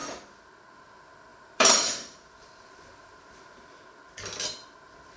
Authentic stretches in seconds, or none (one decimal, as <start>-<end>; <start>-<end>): 0.0-1.3; 3.1-5.2